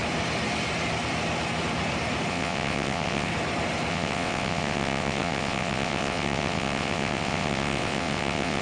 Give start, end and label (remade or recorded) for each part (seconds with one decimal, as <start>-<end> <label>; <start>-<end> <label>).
0.0-2.3 recorded; 2.3-3.3 remade; 3.3-3.9 recorded; 3.9-8.6 remade